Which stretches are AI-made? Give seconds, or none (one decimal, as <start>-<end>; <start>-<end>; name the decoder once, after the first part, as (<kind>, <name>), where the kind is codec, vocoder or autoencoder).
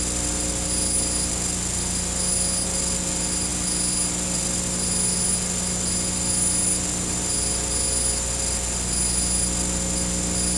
none